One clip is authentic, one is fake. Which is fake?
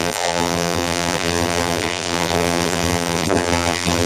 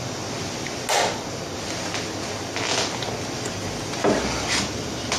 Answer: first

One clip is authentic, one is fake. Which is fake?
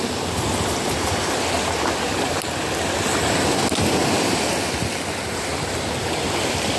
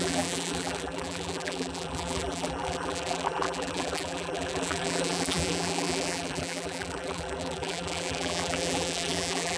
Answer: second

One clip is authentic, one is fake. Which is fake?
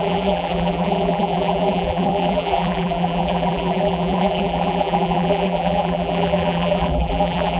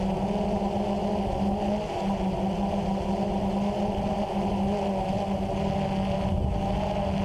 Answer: first